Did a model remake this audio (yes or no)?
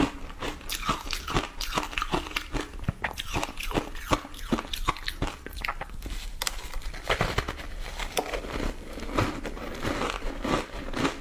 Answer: no